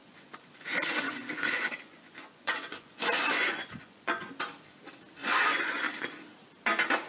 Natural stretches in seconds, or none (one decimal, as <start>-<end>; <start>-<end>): 4.3-5.2; 5.8-7.1